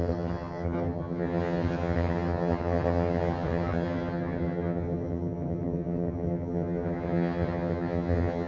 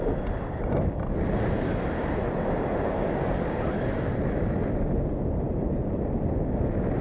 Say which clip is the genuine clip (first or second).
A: second